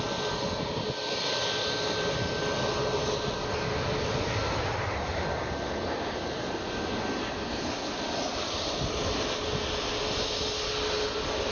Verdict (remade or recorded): recorded